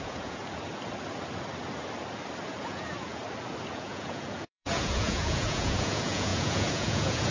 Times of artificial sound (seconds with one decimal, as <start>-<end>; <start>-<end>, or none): 0.0-0.4; 2.6-3.2; 3.7-7.3